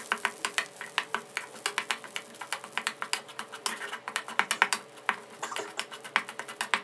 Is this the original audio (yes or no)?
yes